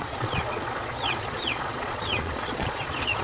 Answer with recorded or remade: remade